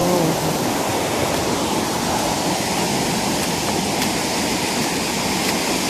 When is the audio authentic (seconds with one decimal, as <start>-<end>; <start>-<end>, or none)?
3.5-5.9